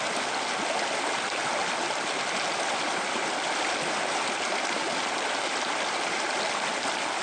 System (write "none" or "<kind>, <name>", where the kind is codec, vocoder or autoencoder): none